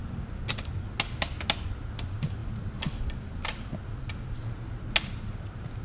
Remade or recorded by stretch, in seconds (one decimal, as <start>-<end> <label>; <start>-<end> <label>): 0.0-5.8 recorded